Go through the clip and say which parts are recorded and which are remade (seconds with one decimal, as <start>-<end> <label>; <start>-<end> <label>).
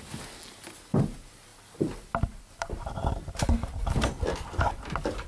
0.0-1.5 recorded; 1.5-4.7 remade; 4.7-5.3 recorded